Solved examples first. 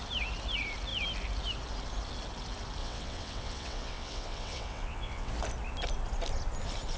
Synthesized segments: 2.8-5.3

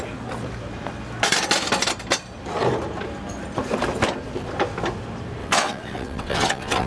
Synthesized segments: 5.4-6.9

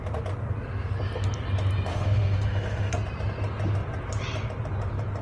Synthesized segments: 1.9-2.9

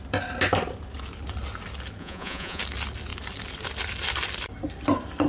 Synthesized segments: 2.0-2.6

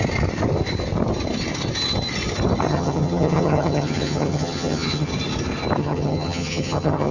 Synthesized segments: 2.7-5.1; 5.8-7.1

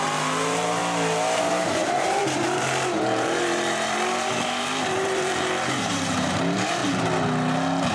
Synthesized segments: 0.0-0.8; 1.4-6.8